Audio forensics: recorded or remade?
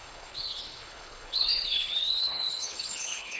remade